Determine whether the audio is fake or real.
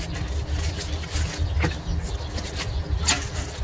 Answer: real